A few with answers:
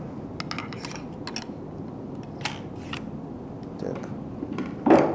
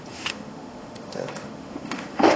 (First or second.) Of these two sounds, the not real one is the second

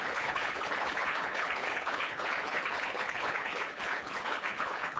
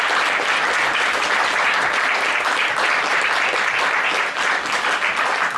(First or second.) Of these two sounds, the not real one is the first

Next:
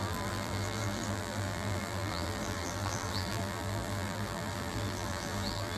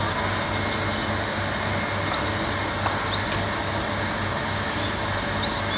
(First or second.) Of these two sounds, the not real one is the first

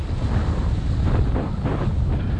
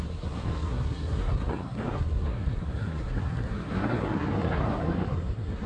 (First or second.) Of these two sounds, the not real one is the second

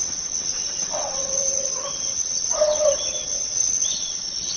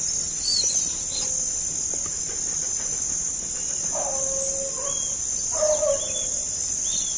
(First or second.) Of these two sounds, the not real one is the first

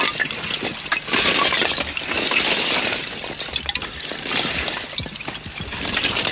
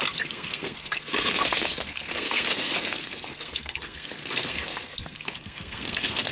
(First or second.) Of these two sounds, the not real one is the second